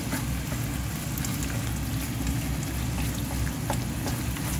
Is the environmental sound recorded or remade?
recorded